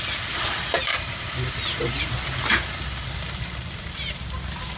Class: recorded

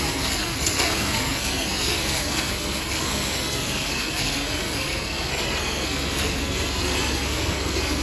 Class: remade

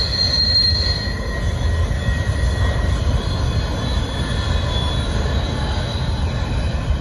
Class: recorded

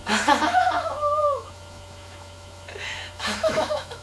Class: remade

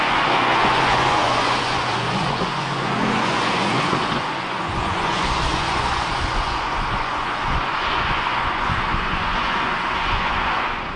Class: remade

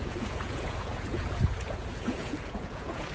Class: remade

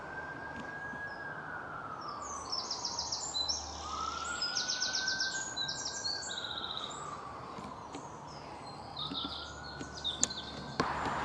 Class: recorded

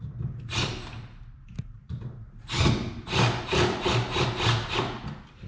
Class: recorded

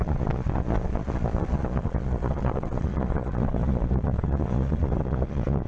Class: remade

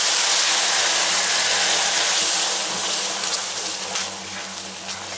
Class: recorded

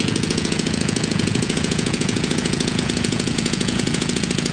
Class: remade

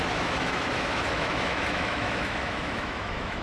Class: remade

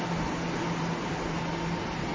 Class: recorded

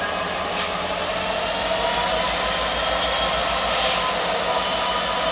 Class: recorded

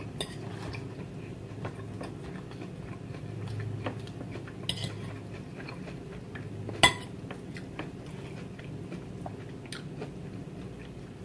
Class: recorded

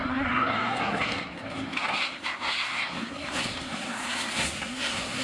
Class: remade